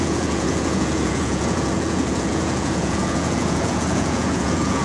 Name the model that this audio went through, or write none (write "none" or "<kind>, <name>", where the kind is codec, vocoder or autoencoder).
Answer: vocoder, Vocos